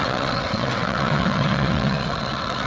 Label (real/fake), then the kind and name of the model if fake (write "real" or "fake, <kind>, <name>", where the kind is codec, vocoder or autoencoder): fake, vocoder, WaveNeXt